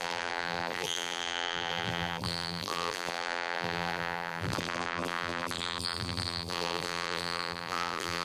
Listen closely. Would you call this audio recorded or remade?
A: remade